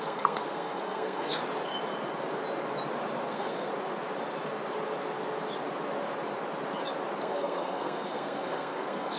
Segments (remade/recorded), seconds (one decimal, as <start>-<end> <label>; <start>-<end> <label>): 0.0-1.4 remade; 1.4-3.3 recorded; 3.3-3.7 remade; 3.7-7.2 recorded; 7.2-9.2 remade